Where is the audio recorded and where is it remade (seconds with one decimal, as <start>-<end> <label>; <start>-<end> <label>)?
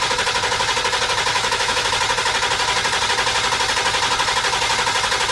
0.0-1.3 recorded; 1.3-1.9 remade; 1.9-5.3 recorded